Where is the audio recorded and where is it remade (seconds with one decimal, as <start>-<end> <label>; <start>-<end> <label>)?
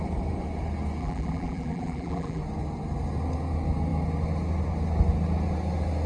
0.0-1.0 recorded; 1.0-2.4 remade; 2.4-6.1 recorded